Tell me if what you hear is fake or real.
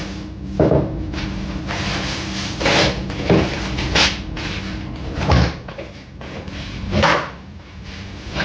real